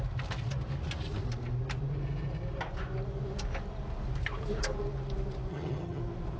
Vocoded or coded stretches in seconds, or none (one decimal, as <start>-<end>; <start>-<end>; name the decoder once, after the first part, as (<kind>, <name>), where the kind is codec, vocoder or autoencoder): 5.5-6.0 (vocoder, HiFi-GAN)